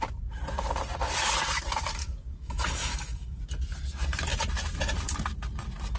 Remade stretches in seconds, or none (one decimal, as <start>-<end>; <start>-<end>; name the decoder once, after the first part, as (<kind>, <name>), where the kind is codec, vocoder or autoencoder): 2.0-3.4 (autoencoder, DAC-VAE)